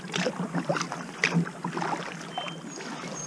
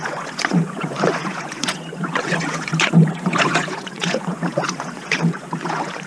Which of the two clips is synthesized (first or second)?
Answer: second